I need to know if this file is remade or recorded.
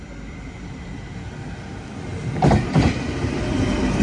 remade